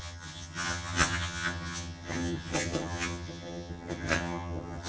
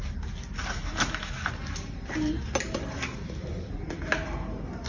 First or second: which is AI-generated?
first